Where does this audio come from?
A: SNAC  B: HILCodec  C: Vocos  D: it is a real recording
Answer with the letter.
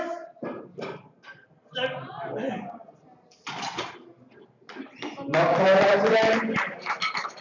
D